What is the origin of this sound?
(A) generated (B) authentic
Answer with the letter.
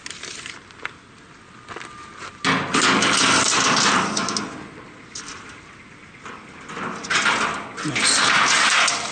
B